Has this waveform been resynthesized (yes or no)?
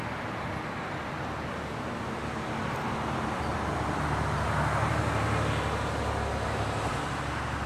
no